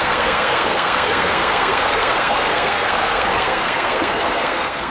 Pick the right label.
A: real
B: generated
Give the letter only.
B